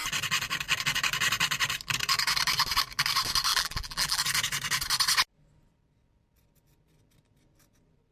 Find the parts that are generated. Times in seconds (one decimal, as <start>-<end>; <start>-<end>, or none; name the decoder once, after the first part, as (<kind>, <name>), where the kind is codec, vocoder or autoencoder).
3.5-4.2 (vocoder, BigVGAN v2)